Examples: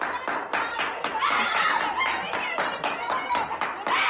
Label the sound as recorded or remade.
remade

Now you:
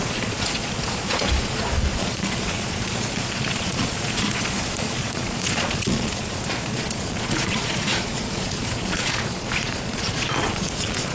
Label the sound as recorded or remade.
remade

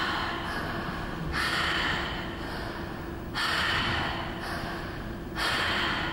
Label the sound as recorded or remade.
recorded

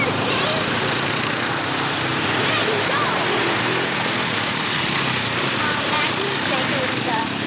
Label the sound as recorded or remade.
remade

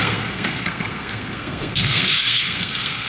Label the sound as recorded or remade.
remade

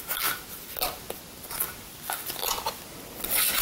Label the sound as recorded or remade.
recorded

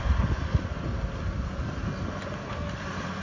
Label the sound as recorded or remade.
recorded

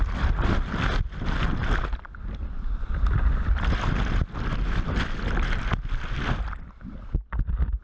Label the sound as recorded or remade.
recorded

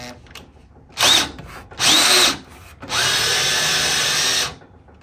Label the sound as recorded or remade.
recorded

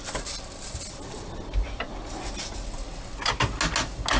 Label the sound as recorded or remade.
recorded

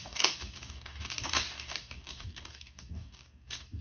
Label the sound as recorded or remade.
remade